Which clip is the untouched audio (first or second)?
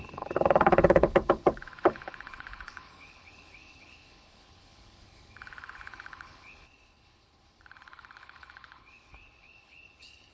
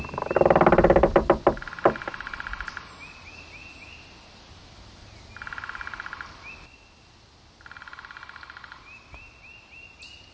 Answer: second